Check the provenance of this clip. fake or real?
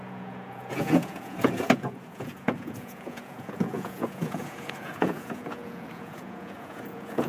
fake